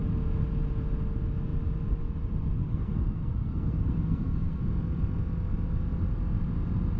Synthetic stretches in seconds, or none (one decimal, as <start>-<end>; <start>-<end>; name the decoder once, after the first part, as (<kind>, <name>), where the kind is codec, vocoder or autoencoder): 2.6-4.6 (codec, SNAC)